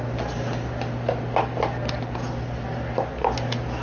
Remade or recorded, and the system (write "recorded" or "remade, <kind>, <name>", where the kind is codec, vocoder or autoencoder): recorded